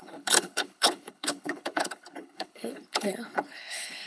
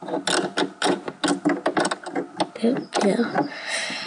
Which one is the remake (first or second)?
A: first